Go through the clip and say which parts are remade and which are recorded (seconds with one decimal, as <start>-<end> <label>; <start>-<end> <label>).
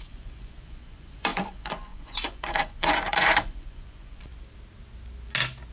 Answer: 0.0-4.3 remade; 4.3-5.7 recorded